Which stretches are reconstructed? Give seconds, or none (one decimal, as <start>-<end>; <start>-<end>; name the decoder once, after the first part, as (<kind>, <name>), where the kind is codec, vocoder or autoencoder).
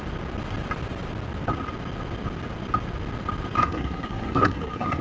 3.6-5.0 (codec, SNAC)